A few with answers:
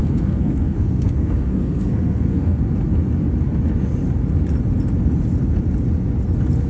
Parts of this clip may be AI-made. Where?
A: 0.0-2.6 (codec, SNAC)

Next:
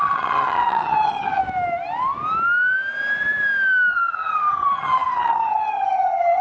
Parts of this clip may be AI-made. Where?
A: 0.0-1.4 (vocoder, HiFi-GAN); 3.9-6.4

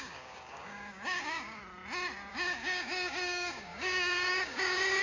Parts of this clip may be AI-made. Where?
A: 0.0-1.6 (codec, DAC); 2.3-5.0